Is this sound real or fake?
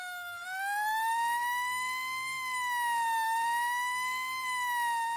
fake